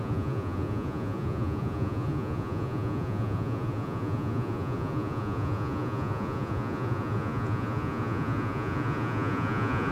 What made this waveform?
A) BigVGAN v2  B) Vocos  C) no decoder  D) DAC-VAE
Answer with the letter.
B